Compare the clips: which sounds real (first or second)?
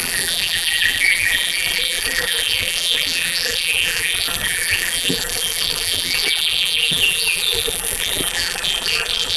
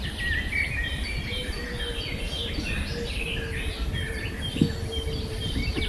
second